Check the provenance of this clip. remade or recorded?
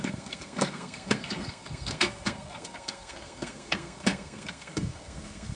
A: remade